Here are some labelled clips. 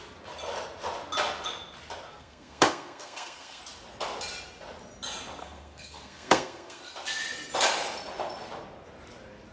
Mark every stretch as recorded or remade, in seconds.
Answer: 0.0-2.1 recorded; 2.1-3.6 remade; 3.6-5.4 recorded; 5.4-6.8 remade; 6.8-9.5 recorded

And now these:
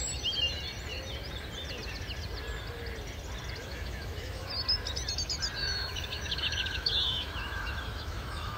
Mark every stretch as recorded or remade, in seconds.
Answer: 0.0-3.6 recorded; 3.6-4.5 remade; 4.5-5.6 recorded; 5.6-8.6 remade